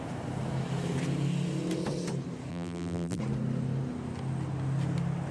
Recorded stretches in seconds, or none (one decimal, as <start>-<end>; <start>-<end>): 0.0-2.5; 3.2-5.3